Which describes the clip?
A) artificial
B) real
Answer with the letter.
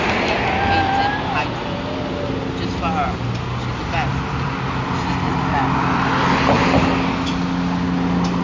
B